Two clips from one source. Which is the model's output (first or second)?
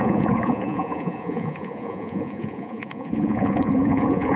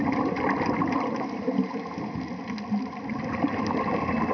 first